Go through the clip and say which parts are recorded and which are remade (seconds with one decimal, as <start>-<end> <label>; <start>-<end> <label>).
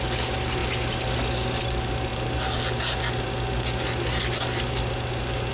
0.0-5.5 recorded